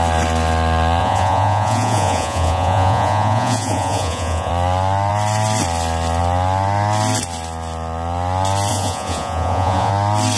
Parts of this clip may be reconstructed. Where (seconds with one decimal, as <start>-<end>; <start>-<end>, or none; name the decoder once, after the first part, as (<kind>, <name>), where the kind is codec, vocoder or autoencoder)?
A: 1.0-4.5 (vocoder, Vocos); 8.7-9.9